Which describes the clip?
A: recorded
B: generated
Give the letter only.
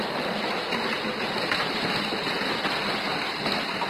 A